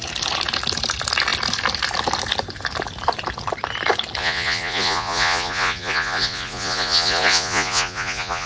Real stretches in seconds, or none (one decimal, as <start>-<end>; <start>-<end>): 0.0-4.2